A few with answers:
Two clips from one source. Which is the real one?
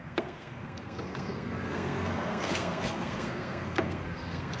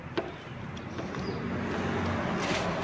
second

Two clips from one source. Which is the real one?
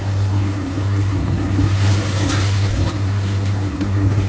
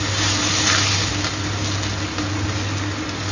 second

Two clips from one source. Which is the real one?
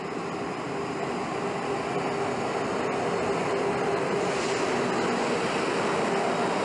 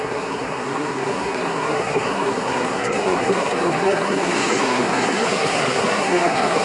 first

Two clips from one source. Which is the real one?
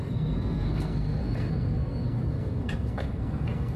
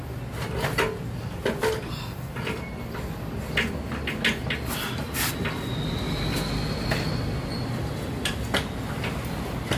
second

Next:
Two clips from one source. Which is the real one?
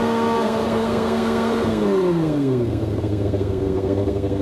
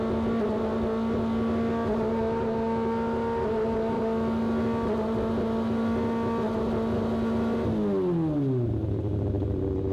second